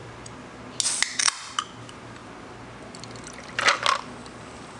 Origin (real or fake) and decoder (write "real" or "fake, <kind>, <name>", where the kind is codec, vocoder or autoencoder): real